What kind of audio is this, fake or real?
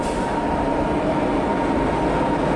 real